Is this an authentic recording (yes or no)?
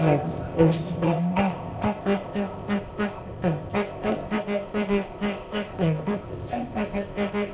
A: no